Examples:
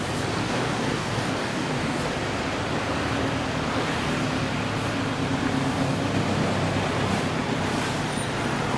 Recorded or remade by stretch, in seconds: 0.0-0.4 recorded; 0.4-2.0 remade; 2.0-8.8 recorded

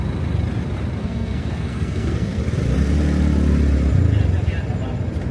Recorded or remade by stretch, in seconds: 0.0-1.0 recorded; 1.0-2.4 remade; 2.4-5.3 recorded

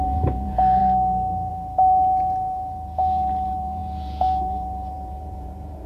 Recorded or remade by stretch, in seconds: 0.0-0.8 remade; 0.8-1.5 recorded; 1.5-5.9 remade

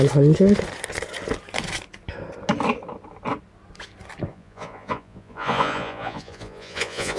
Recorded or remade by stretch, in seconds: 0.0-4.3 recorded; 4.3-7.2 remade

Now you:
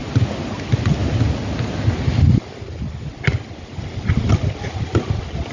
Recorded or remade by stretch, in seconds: 0.0-5.5 recorded

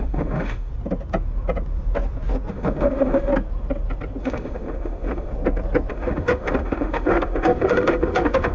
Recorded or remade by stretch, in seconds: 0.0-0.7 remade; 0.7-2.5 recorded; 2.5-3.3 remade; 3.3-4.2 recorded; 4.2-5.3 remade; 5.3-5.9 recorded; 5.9-8.5 remade

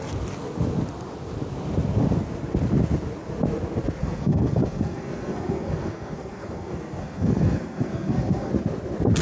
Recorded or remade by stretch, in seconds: 0.0-4.0 recorded; 4.0-8.5 remade; 8.5-9.2 recorded